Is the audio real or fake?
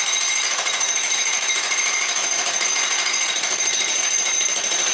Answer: fake